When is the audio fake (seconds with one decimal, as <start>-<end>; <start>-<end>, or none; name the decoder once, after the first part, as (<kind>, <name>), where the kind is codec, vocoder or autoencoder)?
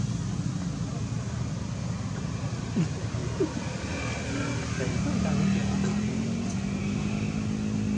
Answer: none